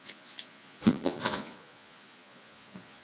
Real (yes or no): no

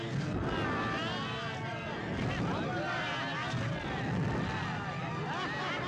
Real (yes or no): yes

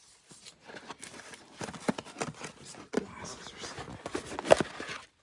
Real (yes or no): yes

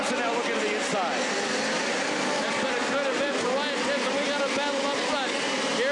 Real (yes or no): yes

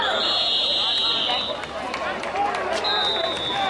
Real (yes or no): yes